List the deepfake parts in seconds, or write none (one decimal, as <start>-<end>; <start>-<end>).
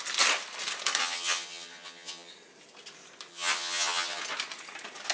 1.0-2.3; 3.3-4.2